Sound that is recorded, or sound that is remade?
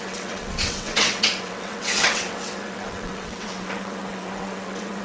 remade